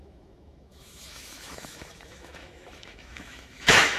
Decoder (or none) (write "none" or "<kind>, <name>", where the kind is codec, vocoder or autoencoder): autoencoder, DAC-VAE